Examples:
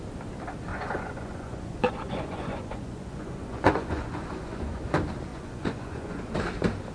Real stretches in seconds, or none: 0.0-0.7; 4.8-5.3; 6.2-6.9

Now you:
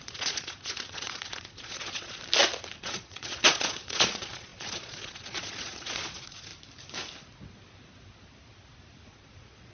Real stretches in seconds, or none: 2.2-2.8; 6.5-9.1

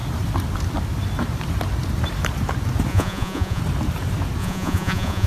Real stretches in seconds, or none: 0.0-2.9; 3.6-4.4

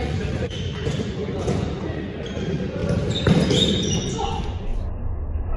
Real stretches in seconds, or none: 2.8-3.7; 4.7-5.6

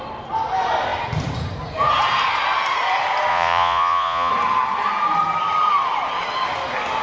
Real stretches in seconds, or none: 0.0-3.3; 4.3-7.0

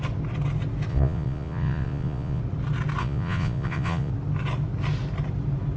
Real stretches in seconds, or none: 0.0-0.9; 2.4-3.0; 4.1-5.8